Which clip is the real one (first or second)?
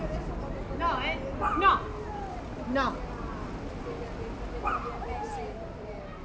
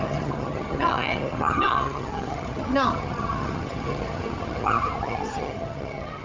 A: first